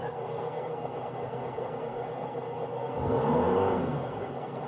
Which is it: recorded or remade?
remade